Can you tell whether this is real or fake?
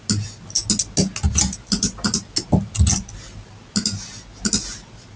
real